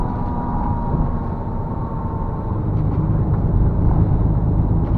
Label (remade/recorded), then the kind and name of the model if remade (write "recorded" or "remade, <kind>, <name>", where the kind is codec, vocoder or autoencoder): remade, vocoder, BigVGAN v2